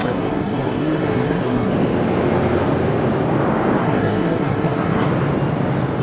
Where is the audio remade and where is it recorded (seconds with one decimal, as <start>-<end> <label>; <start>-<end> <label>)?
0.0-1.7 remade; 1.7-3.8 recorded; 3.8-5.1 remade; 5.1-6.0 recorded